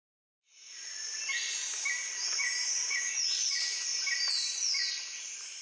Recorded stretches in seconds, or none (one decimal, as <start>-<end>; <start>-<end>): 0.8-2.1; 3.9-5.6